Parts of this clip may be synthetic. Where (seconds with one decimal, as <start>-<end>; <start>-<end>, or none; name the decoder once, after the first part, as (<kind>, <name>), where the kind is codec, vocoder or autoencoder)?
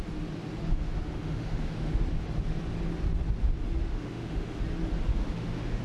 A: 0.7-2.0 (autoencoder, DAC-VAE); 3.9-4.6; 5.1-5.8